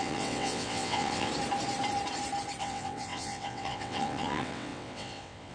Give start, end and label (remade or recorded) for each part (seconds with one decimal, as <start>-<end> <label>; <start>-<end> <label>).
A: 0.0-1.3 remade; 1.3-2.6 recorded; 2.6-5.5 remade